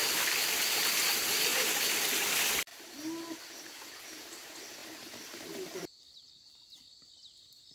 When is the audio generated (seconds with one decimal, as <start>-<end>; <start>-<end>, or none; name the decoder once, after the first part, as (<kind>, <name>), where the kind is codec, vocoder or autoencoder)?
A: 0.0-0.8 (vocoder, BigVGAN v2); 1.5-2.2; 2.7-3.9; 4.8-7.1